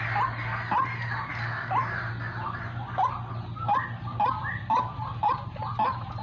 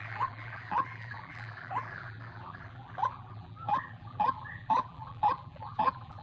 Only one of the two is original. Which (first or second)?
first